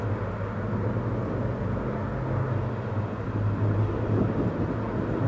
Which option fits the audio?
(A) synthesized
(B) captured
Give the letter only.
B